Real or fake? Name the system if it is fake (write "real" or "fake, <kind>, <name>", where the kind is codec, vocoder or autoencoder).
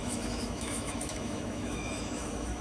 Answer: fake, autoencoder, DAC-VAE